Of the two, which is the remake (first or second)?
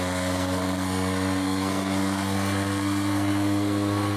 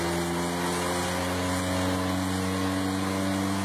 first